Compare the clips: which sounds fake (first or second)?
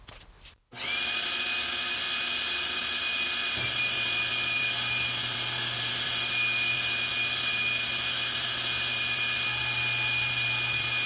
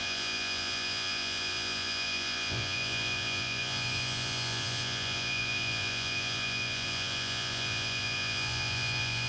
second